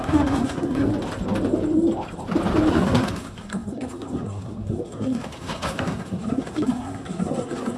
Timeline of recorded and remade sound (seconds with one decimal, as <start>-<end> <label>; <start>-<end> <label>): 0.0-0.9 remade; 0.9-2.7 recorded; 2.7-7.8 remade